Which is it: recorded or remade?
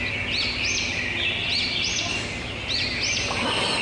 recorded